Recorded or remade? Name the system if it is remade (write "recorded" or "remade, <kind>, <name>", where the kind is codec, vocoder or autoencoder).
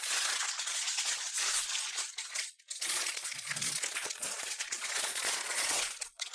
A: remade, vocoder, Vocos